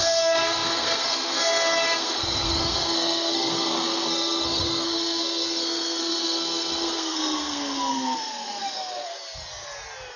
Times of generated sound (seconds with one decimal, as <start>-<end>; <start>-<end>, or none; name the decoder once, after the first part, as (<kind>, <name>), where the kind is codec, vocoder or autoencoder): 0.0-9.1 (codec, SNAC)